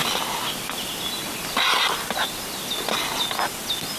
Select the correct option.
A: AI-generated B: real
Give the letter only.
B